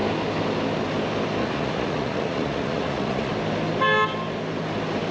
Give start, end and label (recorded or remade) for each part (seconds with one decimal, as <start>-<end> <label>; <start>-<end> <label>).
0.0-1.4 recorded; 1.4-3.3 remade; 3.3-5.1 recorded